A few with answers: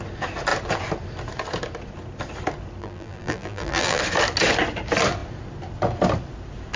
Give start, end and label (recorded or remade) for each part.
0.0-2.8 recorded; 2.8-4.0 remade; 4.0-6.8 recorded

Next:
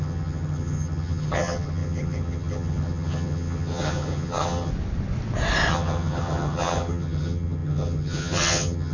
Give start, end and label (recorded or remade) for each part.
0.0-4.7 remade; 4.7-5.7 recorded; 5.7-8.9 remade

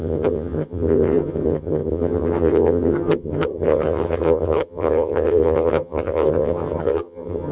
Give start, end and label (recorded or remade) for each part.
0.0-7.5 remade